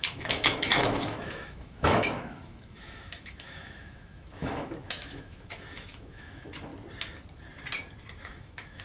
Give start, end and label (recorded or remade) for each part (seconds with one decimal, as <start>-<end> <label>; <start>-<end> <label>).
0.0-6.7 remade; 6.7-8.2 recorded; 8.2-8.8 remade